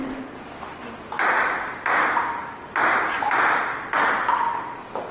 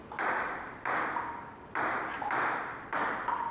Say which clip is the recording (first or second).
first